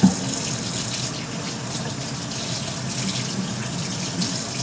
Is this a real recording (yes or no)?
yes